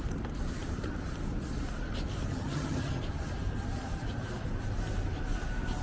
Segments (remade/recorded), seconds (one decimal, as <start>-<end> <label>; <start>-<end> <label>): 0.0-2.3 recorded; 2.3-3.0 remade; 3.0-5.8 recorded